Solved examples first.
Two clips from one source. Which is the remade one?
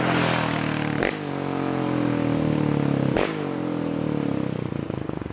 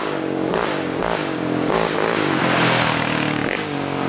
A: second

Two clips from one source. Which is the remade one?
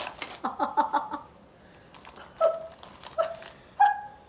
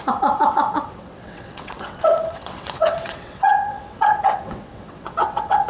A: second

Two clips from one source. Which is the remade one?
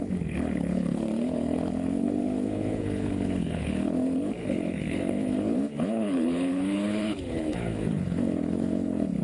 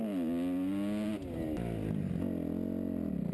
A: first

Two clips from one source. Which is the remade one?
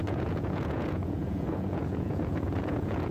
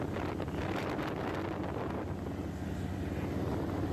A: first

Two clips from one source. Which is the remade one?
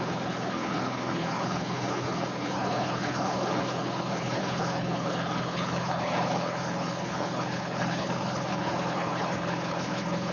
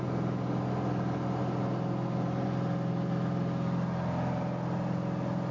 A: first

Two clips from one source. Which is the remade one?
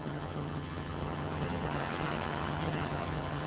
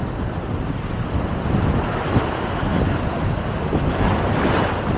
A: first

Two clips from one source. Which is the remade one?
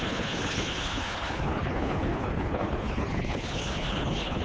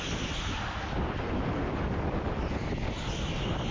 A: first